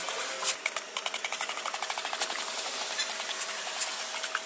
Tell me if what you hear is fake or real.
real